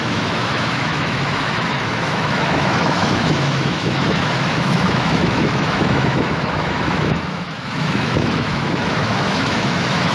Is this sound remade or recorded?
remade